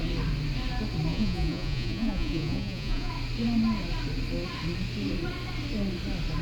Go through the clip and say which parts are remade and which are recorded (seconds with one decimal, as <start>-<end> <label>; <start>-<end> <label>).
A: 0.0-1.1 recorded; 1.1-3.1 remade; 3.1-6.4 recorded